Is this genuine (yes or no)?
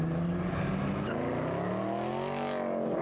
yes